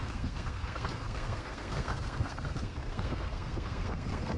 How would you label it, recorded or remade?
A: remade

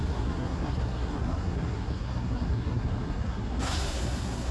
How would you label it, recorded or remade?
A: remade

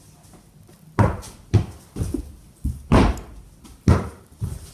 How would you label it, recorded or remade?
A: recorded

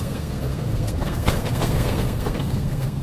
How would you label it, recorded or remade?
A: remade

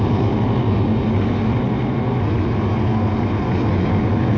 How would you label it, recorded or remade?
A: recorded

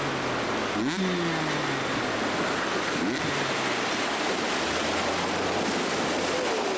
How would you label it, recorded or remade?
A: recorded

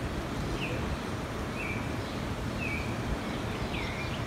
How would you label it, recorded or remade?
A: recorded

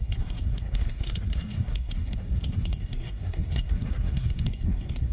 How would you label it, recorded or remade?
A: remade